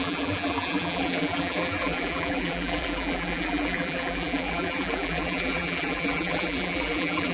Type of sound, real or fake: fake